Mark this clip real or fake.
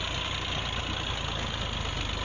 real